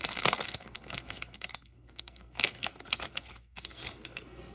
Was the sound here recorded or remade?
remade